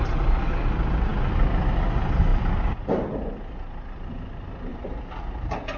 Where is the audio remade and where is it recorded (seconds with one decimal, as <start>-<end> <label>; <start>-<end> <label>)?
0.0-5.8 recorded